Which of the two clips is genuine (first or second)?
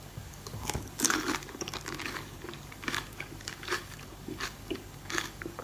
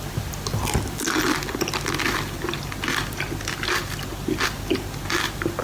second